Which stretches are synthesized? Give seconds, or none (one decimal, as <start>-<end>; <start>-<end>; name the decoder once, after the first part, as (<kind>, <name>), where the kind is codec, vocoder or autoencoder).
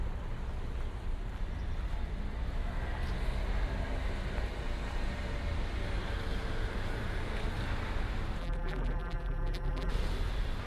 8.4-9.9 (vocoder, BigVGAN v2)